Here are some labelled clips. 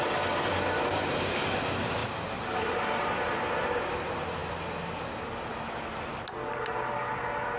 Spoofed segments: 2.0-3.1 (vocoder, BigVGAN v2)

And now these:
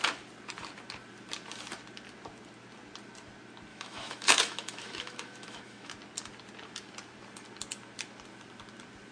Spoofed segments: 3.7-5.9 (autoencoder, DAC-VAE)

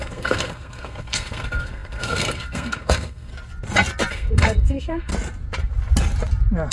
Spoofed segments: 0.0-3.3 (codec, SNAC); 4.1-5.1

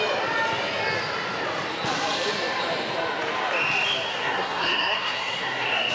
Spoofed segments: 4.1-5.9 (codec, SNAC)

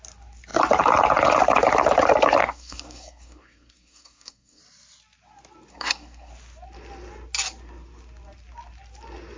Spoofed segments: 2.4-4.6 (codec, SNAC); 5.7-6.3

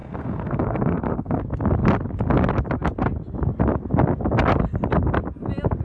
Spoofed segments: 0.0-1.4 (codec, SNAC)